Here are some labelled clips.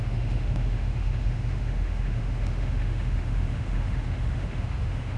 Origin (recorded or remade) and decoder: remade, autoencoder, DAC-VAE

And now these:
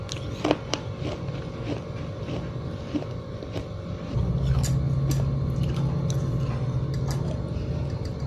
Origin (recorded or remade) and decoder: recorded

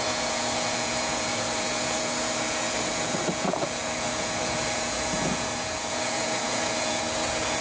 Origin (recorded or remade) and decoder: remade, vocoder, Vocos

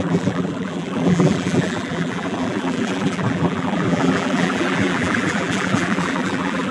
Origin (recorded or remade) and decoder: remade, vocoder, BigVGAN v2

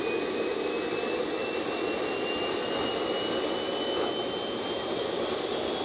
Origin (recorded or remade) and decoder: recorded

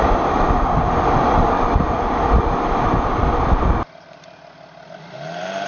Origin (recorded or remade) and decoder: remade, vocoder, BigVGAN v2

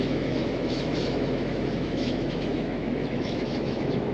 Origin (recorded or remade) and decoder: remade, autoencoder, DAC-VAE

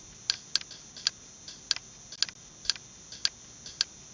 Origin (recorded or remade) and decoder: recorded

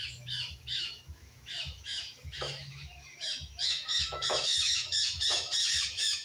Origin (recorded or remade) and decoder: remade, autoencoder, DAC-VAE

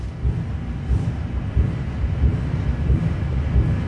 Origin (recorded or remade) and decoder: recorded